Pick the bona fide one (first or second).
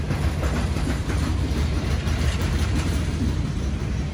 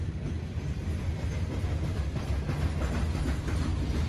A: second